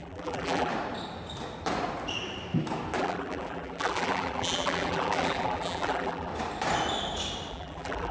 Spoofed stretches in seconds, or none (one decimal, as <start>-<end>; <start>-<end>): 0.0-0.7; 3.0-6.3; 7.5-8.1